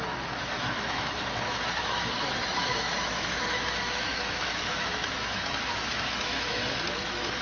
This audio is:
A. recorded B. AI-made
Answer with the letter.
B